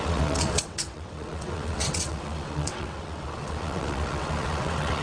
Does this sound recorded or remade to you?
remade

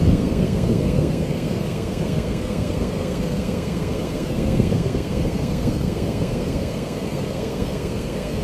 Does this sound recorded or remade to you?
remade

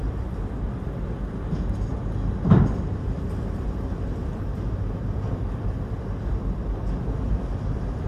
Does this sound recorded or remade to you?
remade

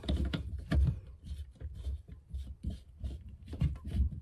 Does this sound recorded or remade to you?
remade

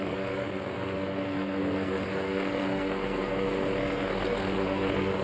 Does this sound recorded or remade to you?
remade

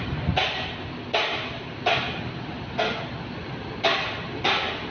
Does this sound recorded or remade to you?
recorded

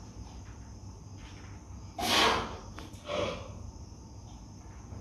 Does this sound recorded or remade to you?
recorded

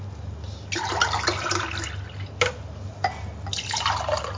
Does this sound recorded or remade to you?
recorded